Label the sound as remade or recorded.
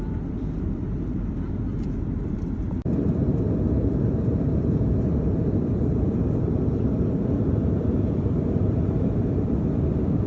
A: remade